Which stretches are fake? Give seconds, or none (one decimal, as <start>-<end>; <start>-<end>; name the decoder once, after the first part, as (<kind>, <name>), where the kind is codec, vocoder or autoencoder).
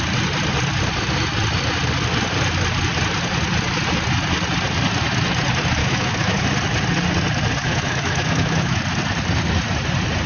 5.8-6.4 (autoencoder, DAC-VAE); 7.6-8.8